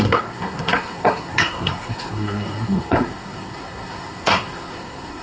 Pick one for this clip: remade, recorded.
remade